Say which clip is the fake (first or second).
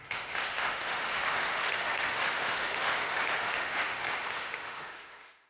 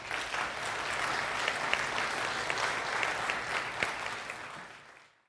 first